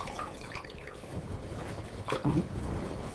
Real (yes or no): no